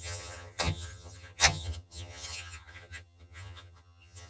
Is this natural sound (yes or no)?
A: no